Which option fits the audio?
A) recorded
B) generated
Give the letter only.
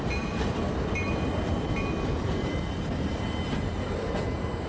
B